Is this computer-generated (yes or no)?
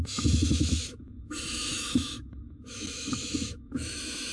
yes